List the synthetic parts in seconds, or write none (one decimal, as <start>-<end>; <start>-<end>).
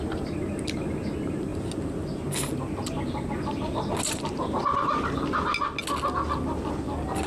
none